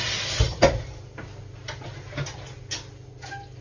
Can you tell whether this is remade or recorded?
recorded